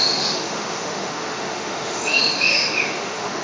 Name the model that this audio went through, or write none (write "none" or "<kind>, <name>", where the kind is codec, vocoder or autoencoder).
autoencoder, DAC-VAE